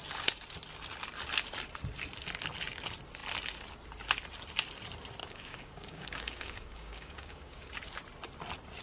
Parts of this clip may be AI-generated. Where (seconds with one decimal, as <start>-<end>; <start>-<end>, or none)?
5.2-7.7